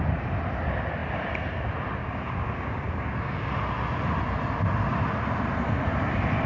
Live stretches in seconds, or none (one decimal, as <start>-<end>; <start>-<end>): 0.0-2.0; 3.5-6.5